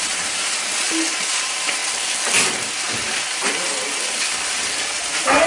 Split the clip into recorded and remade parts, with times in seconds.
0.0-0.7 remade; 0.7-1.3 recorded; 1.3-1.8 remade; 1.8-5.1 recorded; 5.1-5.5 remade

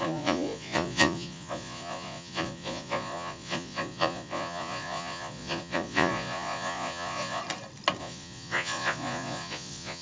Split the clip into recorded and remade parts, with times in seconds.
0.0-7.4 remade; 7.4-8.0 recorded; 8.0-10.0 remade

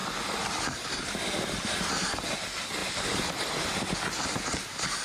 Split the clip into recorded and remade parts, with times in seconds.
0.0-2.3 remade; 2.3-2.8 recorded; 2.8-3.5 remade; 3.5-5.0 recorded

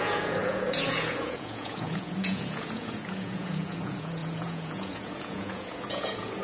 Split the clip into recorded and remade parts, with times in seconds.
0.0-6.4 remade

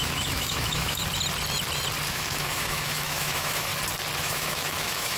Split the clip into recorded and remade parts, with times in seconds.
0.0-1.0 remade; 1.0-2.1 recorded; 2.1-3.7 remade; 3.7-4.2 recorded; 4.2-5.2 remade

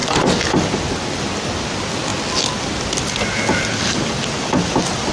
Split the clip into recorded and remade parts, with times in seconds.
0.0-5.1 recorded